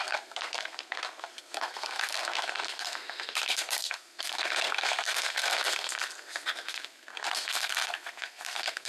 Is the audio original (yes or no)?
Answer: no